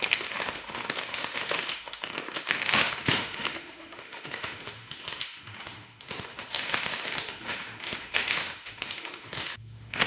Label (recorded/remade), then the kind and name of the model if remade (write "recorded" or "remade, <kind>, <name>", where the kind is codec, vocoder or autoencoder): remade, autoencoder, DAC-VAE